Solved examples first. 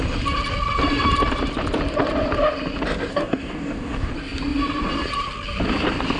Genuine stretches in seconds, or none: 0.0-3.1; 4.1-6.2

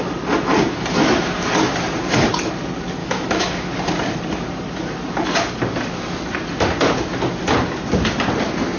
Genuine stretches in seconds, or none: 0.0-3.0; 3.7-8.8

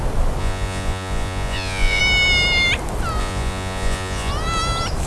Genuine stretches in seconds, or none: 0.0-0.4; 2.0-3.2; 4.3-5.1

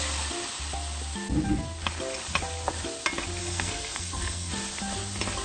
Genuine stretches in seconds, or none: 0.0-3.4; 4.5-5.4

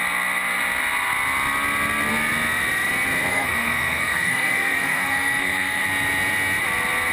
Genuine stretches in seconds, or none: 0.0-3.3; 5.8-7.1

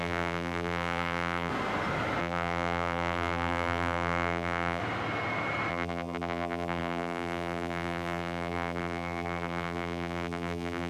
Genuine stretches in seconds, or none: 1.5-2.2; 4.8-5.7

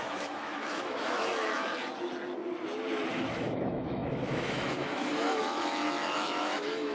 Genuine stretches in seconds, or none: 1.7-3.1